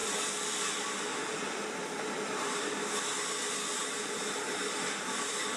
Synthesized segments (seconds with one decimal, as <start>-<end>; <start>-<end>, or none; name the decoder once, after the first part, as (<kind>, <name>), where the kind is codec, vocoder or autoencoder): 1.1-2.6 (vocoder, BigVGAN v2); 3.8-4.4